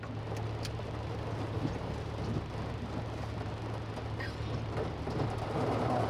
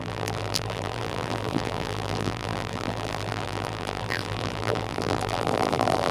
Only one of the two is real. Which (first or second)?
first